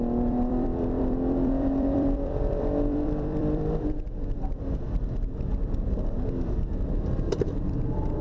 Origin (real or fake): fake